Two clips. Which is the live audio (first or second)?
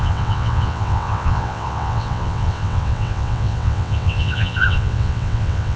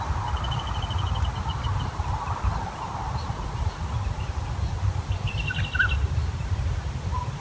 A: second